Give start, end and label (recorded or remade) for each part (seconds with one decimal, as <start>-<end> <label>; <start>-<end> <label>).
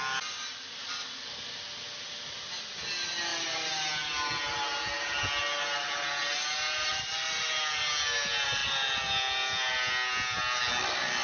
0.0-11.2 recorded